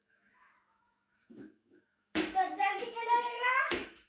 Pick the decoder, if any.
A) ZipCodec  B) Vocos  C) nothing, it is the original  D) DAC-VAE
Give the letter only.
D